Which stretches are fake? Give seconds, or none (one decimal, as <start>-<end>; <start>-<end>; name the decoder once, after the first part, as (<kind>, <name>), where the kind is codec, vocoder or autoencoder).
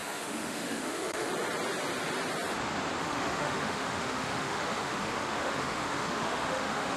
0.0-1.3 (autoencoder, DAC-VAE); 3.0-7.0